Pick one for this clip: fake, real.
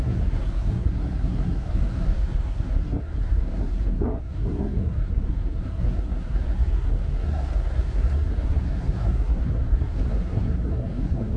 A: fake